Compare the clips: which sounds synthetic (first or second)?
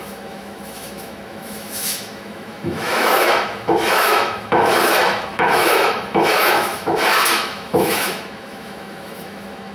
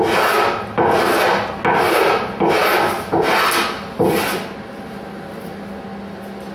first